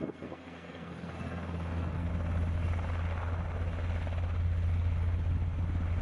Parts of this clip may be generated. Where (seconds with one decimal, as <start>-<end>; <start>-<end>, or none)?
0.0-2.1